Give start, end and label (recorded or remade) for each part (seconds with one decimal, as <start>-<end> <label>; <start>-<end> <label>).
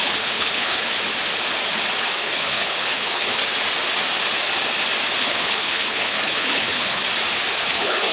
0.0-0.9 remade; 0.9-2.0 recorded; 2.0-3.4 remade; 3.4-5.2 recorded; 5.2-7.0 remade; 7.0-7.5 recorded; 7.5-8.1 remade